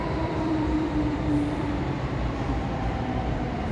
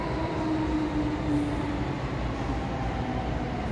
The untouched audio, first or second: second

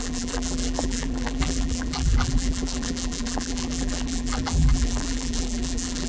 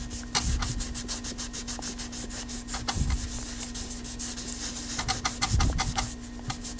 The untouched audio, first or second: second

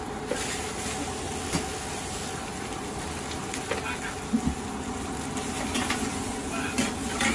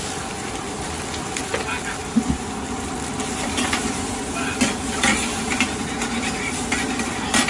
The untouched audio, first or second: first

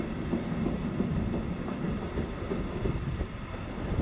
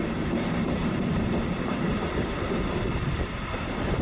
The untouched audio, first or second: first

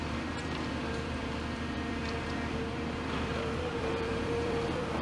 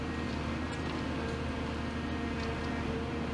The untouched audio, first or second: second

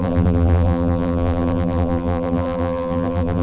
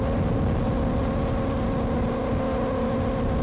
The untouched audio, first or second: second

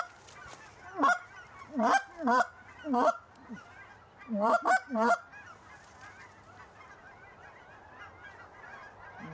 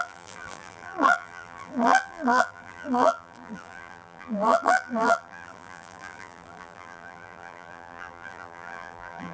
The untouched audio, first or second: first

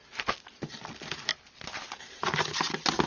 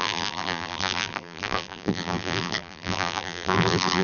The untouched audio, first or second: first